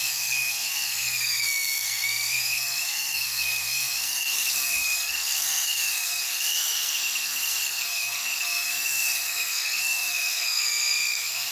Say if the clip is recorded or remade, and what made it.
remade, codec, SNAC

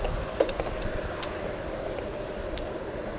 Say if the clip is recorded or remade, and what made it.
recorded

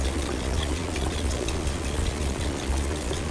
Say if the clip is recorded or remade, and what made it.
remade, vocoder, Vocos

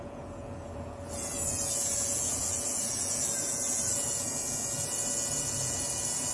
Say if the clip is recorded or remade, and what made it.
remade, vocoder, Vocos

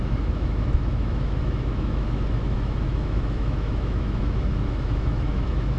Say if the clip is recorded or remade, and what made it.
remade, autoencoder, DAC-VAE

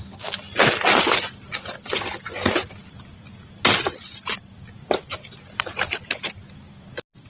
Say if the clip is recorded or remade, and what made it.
recorded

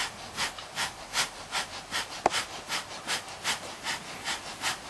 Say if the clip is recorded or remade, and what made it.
recorded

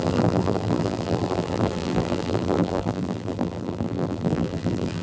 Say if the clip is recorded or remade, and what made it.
remade, vocoder, BigVGAN v2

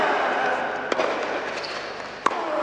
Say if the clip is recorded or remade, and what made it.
recorded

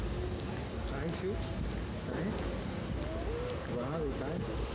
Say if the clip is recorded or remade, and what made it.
recorded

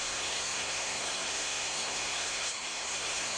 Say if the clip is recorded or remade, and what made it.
remade, codec, SNAC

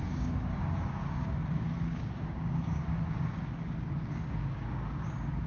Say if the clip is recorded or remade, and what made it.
remade, codec, DAC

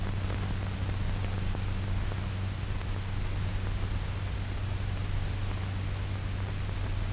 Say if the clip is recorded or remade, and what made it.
recorded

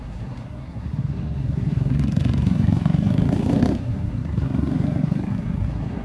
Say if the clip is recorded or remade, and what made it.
remade, codec, SNAC